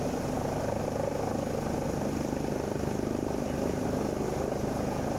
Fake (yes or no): no